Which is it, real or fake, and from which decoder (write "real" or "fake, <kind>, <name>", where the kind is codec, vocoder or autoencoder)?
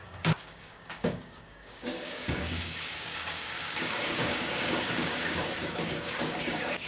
fake, codec, DAC